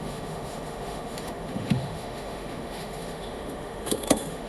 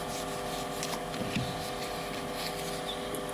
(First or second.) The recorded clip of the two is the second